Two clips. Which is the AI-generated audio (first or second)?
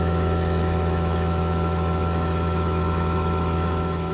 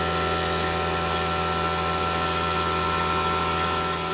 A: first